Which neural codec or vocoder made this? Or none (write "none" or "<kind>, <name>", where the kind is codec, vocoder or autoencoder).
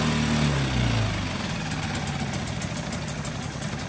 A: none